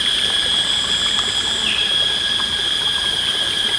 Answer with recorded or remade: recorded